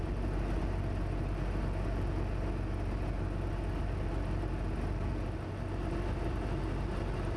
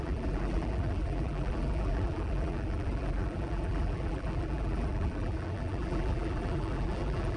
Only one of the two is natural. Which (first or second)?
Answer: first